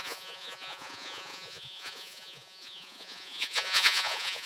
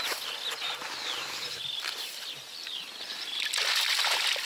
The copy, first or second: first